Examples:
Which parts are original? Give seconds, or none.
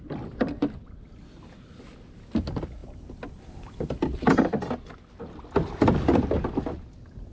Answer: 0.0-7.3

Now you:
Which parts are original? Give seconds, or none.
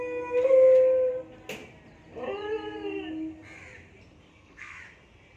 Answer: 0.0-4.3; 4.8-5.4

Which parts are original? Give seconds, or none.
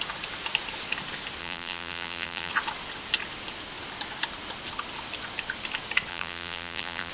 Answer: 0.0-1.4; 2.5-6.1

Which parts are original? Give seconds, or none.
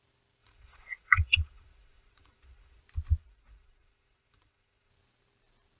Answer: 0.0-0.4; 2.8-3.2; 4.9-5.8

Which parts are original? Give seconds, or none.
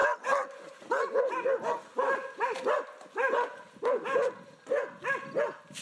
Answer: 0.0-5.8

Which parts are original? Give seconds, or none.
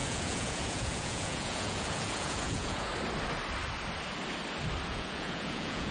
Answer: 2.9-4.9